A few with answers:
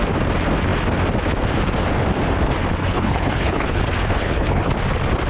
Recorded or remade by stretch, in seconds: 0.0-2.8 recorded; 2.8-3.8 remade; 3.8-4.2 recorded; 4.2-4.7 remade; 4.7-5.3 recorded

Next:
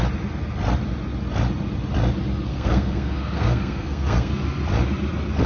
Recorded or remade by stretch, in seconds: 0.0-2.5 recorded; 2.5-4.3 remade; 4.3-5.5 recorded

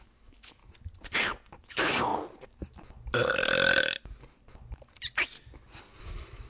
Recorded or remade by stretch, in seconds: 0.0-0.6 remade; 0.6-1.7 recorded; 1.7-2.1 remade; 2.1-6.0 recorded; 6.0-6.5 remade

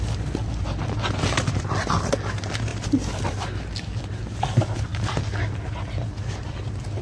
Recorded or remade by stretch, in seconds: 0.0-7.0 recorded

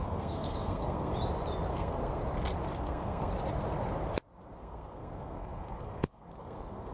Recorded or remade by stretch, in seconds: 0.0-1.1 remade; 1.1-1.7 recorded; 1.7-2.2 remade; 2.2-2.8 recorded; 2.8-3.3 remade; 3.3-4.6 recorded; 4.6-6.9 remade

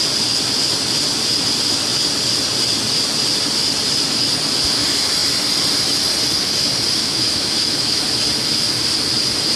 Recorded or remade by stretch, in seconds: 0.0-7.0 recorded; 7.0-8.0 remade; 8.0-9.6 recorded

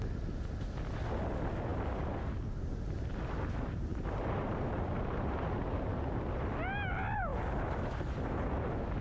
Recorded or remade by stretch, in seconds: 0.0-3.9 recorded; 3.9-6.0 remade; 6.0-9.0 recorded